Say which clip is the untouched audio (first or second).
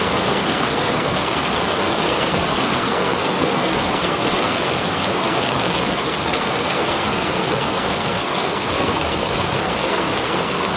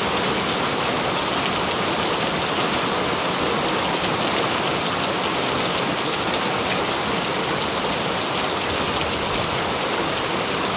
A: second